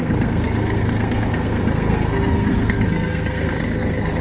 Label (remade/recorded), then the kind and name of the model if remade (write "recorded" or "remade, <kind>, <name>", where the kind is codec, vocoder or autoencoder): remade, codec, SNAC